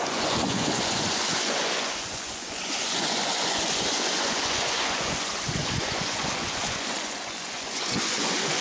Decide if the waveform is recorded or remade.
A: remade